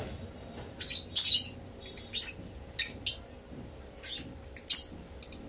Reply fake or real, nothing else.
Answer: real